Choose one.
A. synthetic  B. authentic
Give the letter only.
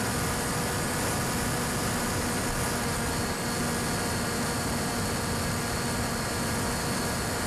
B